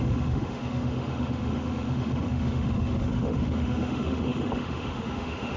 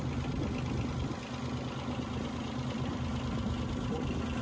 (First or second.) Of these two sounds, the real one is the second